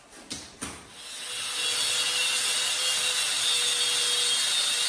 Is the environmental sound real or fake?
real